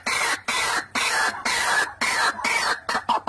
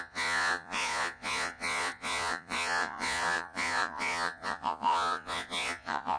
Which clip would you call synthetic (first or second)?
second